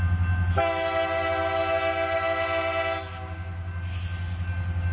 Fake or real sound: real